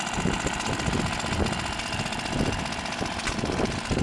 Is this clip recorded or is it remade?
recorded